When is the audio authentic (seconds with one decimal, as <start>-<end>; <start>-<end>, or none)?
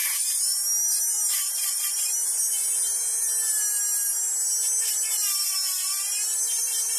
0.0-7.0